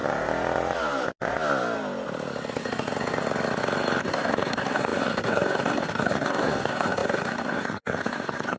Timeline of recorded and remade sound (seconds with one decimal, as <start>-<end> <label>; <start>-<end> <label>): 0.0-4.0 recorded; 4.0-8.6 remade